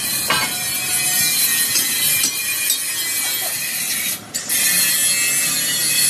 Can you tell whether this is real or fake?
real